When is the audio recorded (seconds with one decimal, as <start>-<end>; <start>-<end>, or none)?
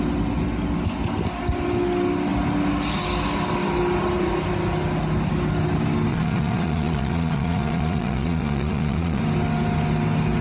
0.0-6.1; 9.2-10.4